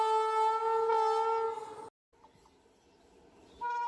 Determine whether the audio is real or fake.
real